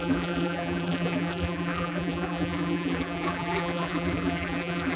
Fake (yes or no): yes